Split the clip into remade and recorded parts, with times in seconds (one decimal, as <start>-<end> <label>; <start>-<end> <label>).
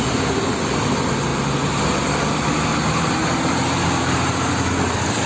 0.0-5.3 recorded